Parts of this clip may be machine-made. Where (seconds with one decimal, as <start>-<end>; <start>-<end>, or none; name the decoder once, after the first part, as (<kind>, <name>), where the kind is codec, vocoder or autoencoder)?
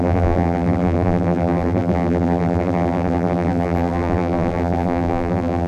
0.0-5.7 (vocoder, BigVGAN v2)